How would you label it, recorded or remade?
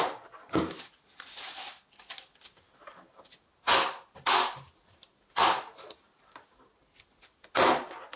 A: recorded